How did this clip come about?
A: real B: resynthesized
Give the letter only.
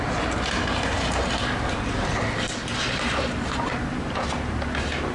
A